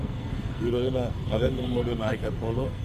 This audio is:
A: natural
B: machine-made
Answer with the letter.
B